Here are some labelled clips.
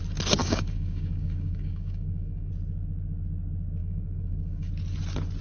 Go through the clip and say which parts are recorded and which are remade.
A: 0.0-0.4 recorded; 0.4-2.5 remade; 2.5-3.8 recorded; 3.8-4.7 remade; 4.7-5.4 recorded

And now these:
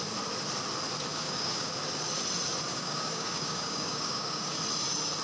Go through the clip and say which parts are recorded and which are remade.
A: 0.0-1.1 recorded; 1.1-1.7 remade; 1.7-2.7 recorded; 2.7-4.6 remade; 4.6-5.2 recorded

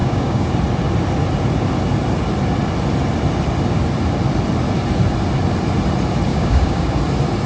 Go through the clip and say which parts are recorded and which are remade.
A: 0.0-0.5 remade; 0.5-6.3 recorded; 6.3-7.0 remade; 7.0-7.5 recorded

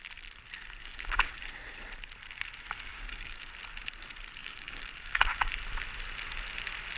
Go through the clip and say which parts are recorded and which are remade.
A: 0.0-0.8 recorded; 0.8-1.4 remade; 1.4-2.9 recorded; 2.9-3.5 remade; 3.5-4.4 recorded; 4.4-5.5 remade; 5.5-7.0 recorded

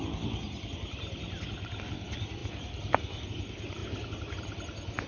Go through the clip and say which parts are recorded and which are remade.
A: 0.0-5.1 recorded